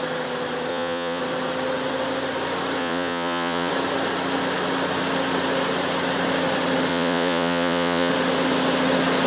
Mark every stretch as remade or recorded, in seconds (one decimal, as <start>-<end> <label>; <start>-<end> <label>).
0.0-0.7 recorded; 0.7-1.2 remade; 1.2-2.8 recorded; 2.8-3.7 remade; 3.7-6.9 recorded; 6.9-8.1 remade; 8.1-9.3 recorded